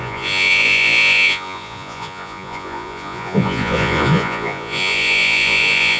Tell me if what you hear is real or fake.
fake